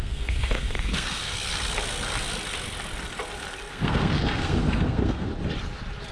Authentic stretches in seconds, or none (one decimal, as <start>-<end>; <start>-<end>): 1.2-3.7; 5.3-6.1